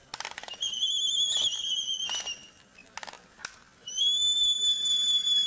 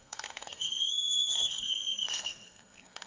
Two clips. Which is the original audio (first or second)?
first